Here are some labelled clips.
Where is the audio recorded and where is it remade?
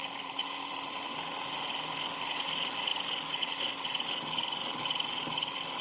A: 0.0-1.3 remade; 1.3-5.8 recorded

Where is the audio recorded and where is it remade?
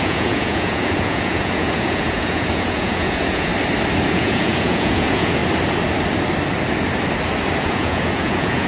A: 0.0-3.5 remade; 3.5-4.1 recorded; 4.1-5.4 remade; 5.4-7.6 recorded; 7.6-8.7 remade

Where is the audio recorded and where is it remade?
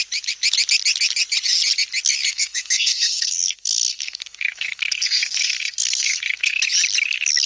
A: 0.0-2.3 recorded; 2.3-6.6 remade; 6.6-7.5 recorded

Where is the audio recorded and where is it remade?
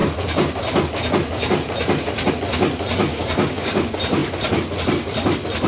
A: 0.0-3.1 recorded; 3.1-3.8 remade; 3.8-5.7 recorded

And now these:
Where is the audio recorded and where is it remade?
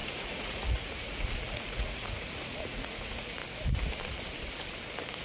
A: 0.0-3.4 remade; 3.4-5.2 recorded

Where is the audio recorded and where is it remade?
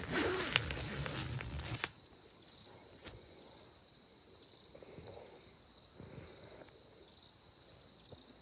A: 0.0-3.0 recorded; 3.0-3.6 remade; 3.6-8.4 recorded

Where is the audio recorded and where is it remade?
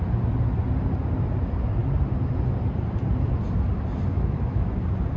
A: 0.0-4.1 recorded; 4.1-4.7 remade; 4.7-5.2 recorded